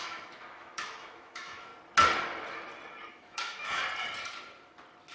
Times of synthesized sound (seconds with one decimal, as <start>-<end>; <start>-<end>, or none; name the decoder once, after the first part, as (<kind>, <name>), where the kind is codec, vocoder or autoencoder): 0.0-1.7 (autoencoder, DAC-VAE); 3.1-3.8